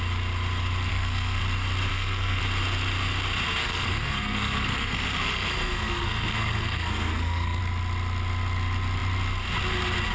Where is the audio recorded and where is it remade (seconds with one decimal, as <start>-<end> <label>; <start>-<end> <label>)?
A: 0.0-0.9 recorded; 0.9-1.4 remade; 1.4-1.9 recorded; 1.9-2.4 remade; 2.4-3.6 recorded; 3.6-7.6 remade; 7.6-10.1 recorded

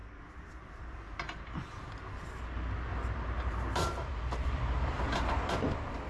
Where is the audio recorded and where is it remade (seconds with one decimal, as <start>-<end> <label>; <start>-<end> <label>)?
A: 0.0-1.9 remade; 1.9-2.9 recorded; 2.9-4.6 remade; 4.6-6.1 recorded

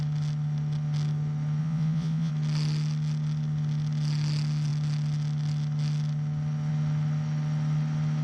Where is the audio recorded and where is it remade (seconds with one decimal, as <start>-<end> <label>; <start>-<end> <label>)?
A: 0.0-1.6 recorded; 1.6-2.3 remade; 2.3-8.2 recorded

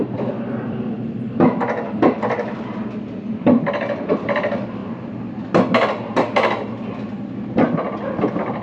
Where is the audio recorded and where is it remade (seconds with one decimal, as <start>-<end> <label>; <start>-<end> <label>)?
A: 0.0-8.6 recorded

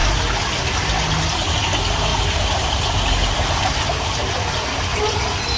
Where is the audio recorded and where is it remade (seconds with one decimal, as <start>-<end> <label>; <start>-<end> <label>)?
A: 0.0-2.1 recorded; 2.1-4.4 remade; 4.4-5.6 recorded